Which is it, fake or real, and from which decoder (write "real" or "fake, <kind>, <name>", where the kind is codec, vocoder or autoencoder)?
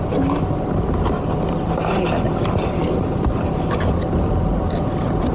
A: real